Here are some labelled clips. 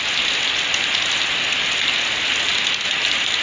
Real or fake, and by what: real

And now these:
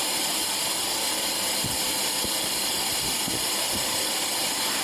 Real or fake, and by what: real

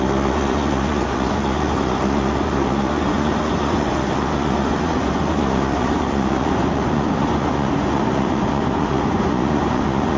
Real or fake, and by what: fake, vocoder, Vocos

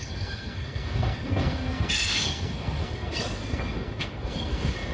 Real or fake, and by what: fake, codec, SNAC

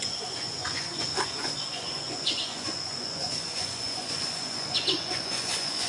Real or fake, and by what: fake, vocoder, Vocos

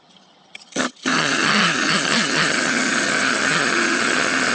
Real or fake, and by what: fake, vocoder, HiFi-GAN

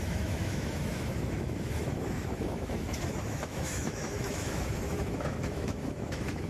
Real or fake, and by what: fake, autoencoder, DAC-VAE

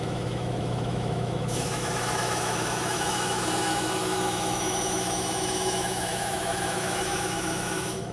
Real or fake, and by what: fake, autoencoder, DAC-VAE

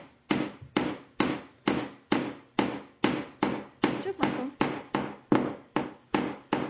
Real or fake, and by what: real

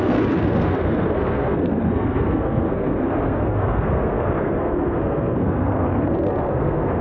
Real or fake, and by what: fake, codec, SNAC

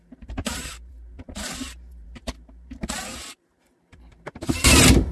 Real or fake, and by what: fake, vocoder, BigVGAN v2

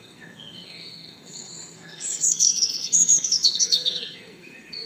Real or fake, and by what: fake, codec, SNAC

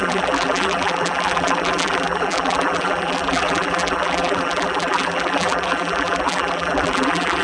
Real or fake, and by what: fake, vocoder, BigVGAN v2